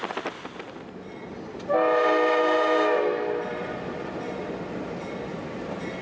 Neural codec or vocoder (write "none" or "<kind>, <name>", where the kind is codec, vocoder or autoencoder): none